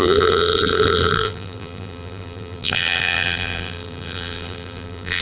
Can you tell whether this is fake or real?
fake